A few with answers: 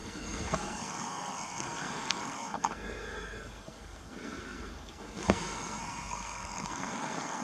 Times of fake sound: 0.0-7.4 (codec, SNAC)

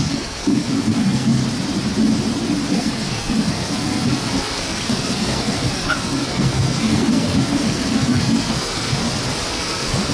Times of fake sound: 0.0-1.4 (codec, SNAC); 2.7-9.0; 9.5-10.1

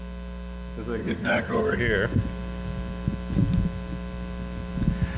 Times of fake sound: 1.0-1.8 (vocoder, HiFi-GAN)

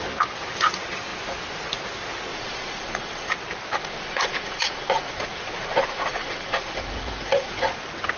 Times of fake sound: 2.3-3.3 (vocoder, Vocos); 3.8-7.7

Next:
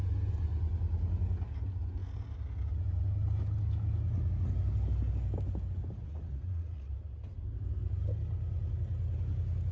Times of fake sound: 6.1-6.9 (vocoder, Vocos)

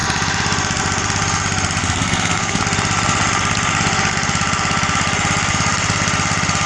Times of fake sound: 1.8-2.6 (codec, SNAC)

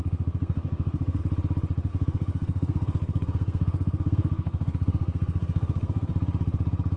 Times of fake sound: 0.0-1.2 (codec, SNAC); 1.9-6.1